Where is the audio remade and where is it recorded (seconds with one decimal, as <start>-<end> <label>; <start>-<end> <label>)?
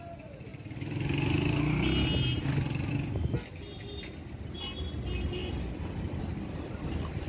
0.0-7.3 recorded